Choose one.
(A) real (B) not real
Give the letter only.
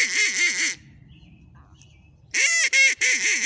B